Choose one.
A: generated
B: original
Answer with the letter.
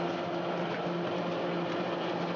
B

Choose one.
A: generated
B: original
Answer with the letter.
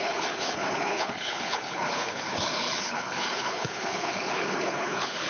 A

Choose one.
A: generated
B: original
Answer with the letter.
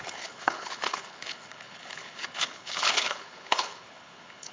A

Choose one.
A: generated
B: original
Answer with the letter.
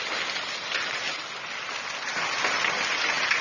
B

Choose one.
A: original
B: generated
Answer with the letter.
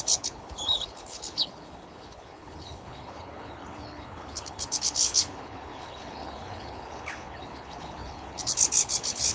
B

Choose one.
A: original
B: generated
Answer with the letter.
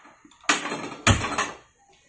A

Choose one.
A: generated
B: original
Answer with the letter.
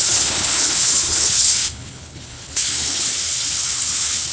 A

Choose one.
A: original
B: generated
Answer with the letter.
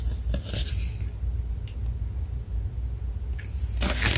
A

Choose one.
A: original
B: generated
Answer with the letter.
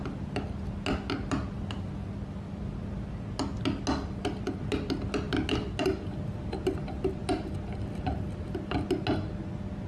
A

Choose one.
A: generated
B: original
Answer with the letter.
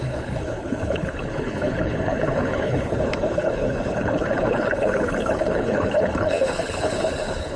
A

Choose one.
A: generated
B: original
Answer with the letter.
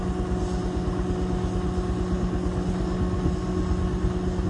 B